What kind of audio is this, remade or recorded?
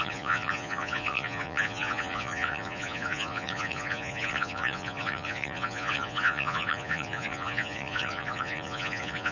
remade